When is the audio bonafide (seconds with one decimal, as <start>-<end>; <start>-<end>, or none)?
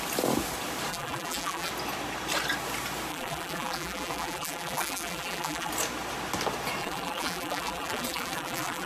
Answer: 0.0-0.9; 1.7-3.1; 5.7-6.8